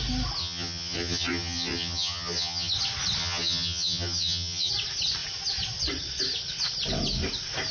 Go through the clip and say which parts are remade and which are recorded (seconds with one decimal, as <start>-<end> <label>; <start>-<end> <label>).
0.0-0.4 recorded; 0.4-2.7 remade; 2.7-3.2 recorded; 3.2-4.7 remade; 4.7-7.7 recorded